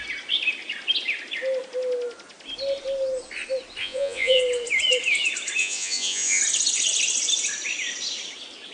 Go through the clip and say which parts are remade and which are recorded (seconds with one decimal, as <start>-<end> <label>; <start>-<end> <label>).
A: 0.0-3.8 recorded; 3.8-4.4 remade; 4.4-5.6 recorded; 5.6-6.4 remade; 6.4-8.7 recorded